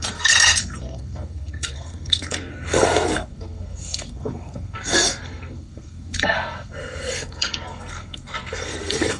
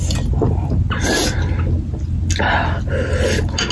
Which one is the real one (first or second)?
second